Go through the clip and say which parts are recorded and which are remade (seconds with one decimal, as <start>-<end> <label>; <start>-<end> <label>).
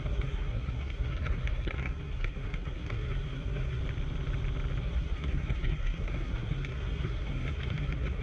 0.0-3.8 remade; 3.8-4.8 recorded; 4.8-8.2 remade